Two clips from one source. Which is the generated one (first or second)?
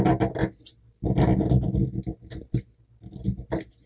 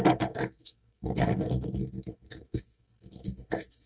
second